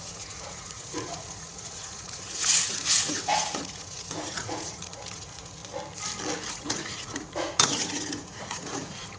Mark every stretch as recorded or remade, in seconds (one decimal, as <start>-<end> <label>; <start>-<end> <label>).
0.0-5.6 remade; 5.6-6.5 recorded; 6.5-9.2 remade